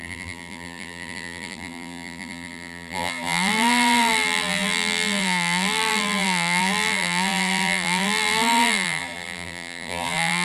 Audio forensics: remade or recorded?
remade